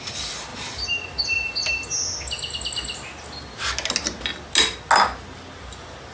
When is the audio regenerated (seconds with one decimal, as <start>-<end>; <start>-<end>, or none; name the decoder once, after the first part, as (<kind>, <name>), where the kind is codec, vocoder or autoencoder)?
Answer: none